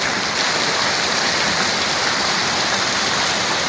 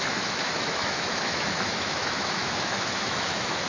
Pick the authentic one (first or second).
first